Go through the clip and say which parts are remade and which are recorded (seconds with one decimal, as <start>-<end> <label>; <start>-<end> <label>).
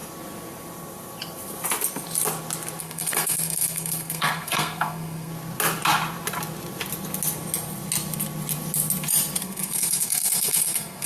0.0-2.8 recorded; 2.8-5.3 remade; 5.3-9.4 recorded; 9.4-11.1 remade